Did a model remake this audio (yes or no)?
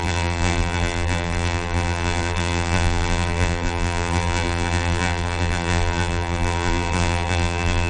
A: yes